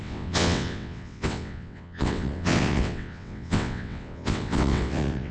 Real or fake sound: fake